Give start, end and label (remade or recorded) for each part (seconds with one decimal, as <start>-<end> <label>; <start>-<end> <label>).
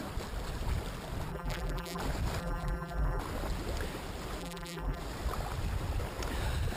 0.0-1.3 recorded; 1.3-2.0 remade; 2.0-2.4 recorded; 2.4-3.2 remade; 3.2-4.4 recorded; 4.4-5.0 remade; 5.0-6.8 recorded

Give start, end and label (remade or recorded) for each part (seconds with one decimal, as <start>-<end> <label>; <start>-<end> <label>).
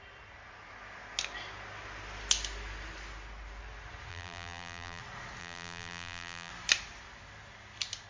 0.0-4.1 recorded; 4.1-5.0 remade; 5.0-5.4 recorded; 5.4-6.5 remade; 6.5-8.1 recorded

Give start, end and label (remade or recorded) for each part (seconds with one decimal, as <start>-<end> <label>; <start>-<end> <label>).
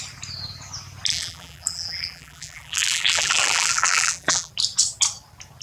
0.0-1.1 recorded; 1.1-4.5 remade; 4.5-5.6 recorded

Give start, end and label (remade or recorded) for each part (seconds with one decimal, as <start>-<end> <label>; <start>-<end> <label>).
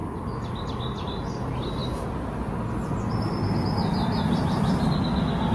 0.0-5.5 recorded